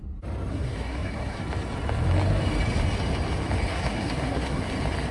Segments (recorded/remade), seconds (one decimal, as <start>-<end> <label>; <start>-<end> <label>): 0.0-0.5 recorded; 0.5-1.4 remade; 1.4-3.7 recorded; 3.7-4.6 remade; 4.6-5.1 recorded